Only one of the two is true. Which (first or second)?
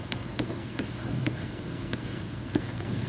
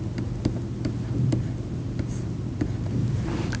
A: second